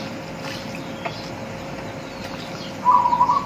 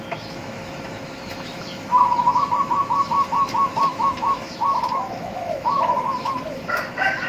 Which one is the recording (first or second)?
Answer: first